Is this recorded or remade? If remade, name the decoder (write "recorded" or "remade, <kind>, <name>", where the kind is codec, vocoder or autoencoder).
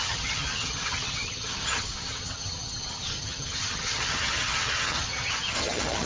remade, vocoder, HiFi-GAN